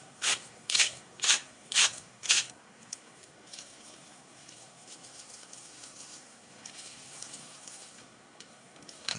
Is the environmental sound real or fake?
fake